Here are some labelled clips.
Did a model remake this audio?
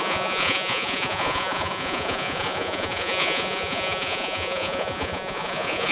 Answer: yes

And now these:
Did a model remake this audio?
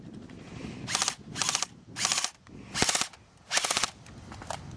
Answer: no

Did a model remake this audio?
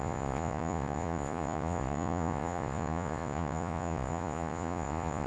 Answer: yes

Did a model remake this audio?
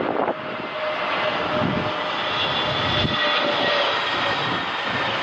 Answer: no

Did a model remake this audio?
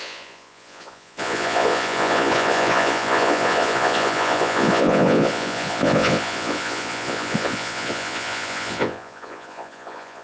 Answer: yes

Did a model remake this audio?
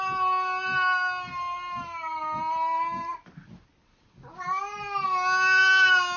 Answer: no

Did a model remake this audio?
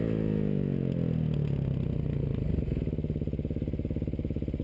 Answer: no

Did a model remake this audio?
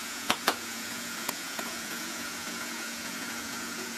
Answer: yes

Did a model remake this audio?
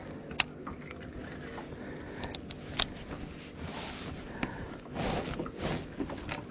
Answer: no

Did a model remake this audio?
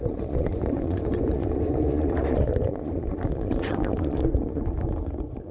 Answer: yes